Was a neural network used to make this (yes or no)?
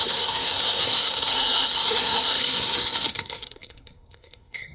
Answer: yes